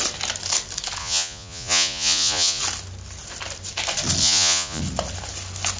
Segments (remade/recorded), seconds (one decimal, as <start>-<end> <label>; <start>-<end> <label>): 0.0-1.0 recorded; 1.0-2.6 remade; 2.6-4.2 recorded; 4.2-4.8 remade; 4.8-5.8 recorded

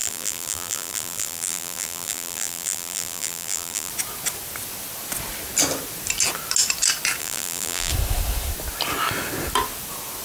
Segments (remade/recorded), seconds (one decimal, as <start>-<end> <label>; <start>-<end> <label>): 0.0-3.9 remade; 3.9-7.2 recorded; 7.2-7.9 remade; 7.9-10.2 recorded

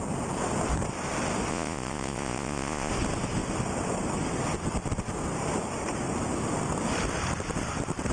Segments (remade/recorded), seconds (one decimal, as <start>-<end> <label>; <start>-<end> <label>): 0.0-1.5 recorded; 1.5-2.9 remade; 2.9-8.1 recorded

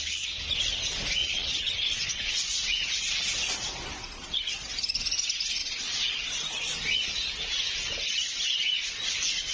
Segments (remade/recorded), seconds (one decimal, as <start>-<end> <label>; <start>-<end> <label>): 0.0-1.2 recorded; 1.2-2.3 remade; 2.3-5.6 recorded; 5.6-6.1 remade; 6.1-9.5 recorded

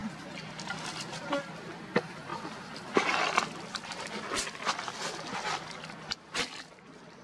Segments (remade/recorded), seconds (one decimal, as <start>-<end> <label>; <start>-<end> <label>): 0.0-7.2 recorded

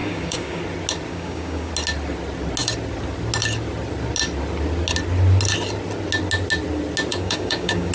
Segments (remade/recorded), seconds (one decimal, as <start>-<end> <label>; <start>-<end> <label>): 0.0-0.6 remade; 0.6-1.1 recorded; 1.1-1.7 remade; 1.7-7.1 recorded; 7.1-7.9 remade

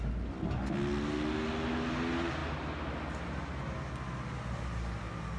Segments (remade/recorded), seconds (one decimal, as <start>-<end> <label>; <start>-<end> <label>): 0.0-5.4 recorded